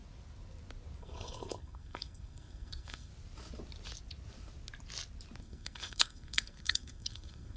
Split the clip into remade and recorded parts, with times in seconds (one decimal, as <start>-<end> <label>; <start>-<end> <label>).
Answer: 0.0-1.0 recorded; 1.0-3.1 remade; 3.1-5.4 recorded; 5.4-7.6 remade